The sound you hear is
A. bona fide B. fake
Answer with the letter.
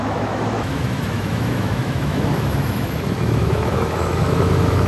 B